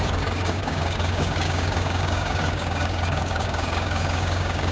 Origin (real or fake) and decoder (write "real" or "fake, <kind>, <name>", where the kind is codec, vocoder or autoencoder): fake, codec, DAC